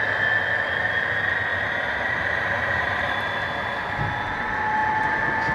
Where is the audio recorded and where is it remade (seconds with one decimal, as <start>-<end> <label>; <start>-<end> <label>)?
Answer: 0.0-1.5 recorded; 1.5-3.1 remade; 3.1-5.5 recorded